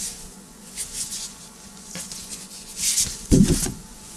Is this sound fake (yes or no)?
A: yes